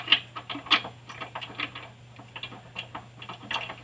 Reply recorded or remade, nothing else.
recorded